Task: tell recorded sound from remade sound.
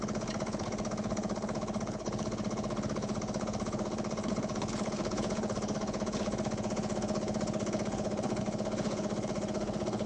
remade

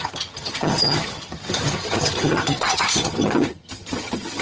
remade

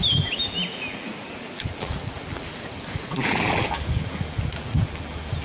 remade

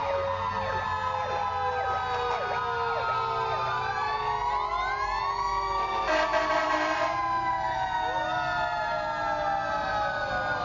recorded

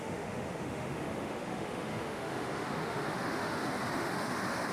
remade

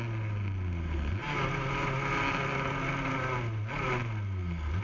recorded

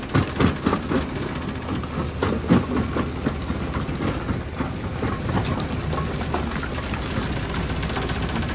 recorded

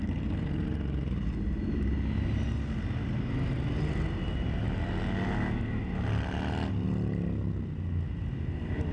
recorded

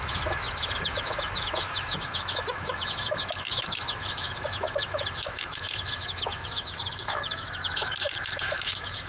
remade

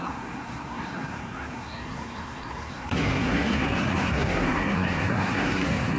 remade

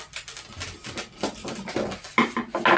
recorded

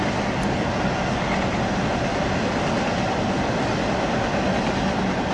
recorded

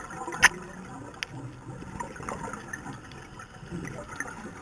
recorded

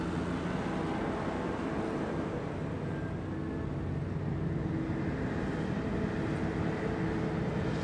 recorded